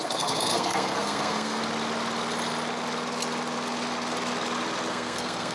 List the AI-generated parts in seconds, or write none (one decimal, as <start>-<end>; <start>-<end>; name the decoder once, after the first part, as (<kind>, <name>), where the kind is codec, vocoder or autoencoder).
0.0-1.6 (codec, SNAC); 4.9-5.5